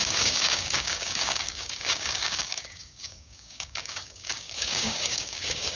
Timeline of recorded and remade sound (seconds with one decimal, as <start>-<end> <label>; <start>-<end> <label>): 0.0-5.8 remade